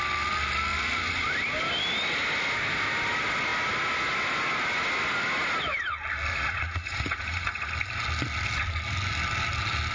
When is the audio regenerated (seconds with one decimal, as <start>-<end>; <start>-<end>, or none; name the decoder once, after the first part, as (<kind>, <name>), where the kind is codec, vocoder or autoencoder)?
6.3-7.7 (vocoder, Vocos)